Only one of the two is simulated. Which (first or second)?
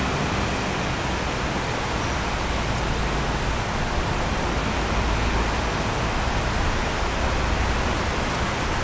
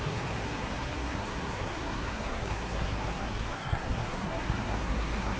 second